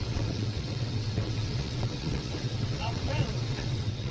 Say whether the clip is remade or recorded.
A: remade